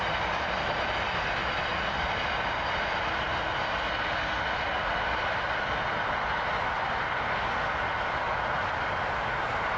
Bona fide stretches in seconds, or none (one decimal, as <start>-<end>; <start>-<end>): 0.0-9.8